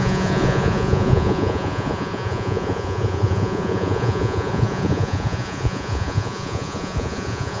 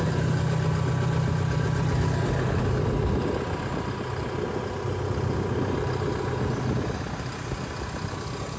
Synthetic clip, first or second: first